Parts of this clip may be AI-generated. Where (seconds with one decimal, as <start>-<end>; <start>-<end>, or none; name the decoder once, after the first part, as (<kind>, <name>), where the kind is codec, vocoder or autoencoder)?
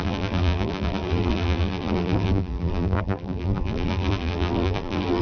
0.0-5.2 (vocoder, BigVGAN v2)